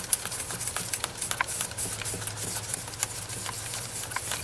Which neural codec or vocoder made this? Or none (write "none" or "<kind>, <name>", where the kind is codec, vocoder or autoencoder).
none